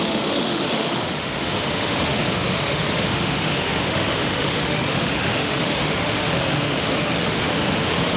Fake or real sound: fake